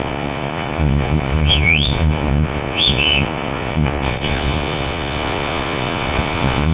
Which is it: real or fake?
fake